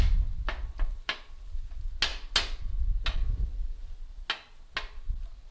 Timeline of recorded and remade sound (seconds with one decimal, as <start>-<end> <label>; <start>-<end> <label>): 0.0-5.5 recorded